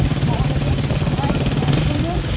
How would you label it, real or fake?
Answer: real